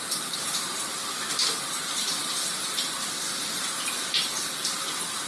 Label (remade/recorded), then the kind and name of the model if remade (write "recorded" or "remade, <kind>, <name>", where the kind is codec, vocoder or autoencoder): remade, vocoder, BigVGAN v2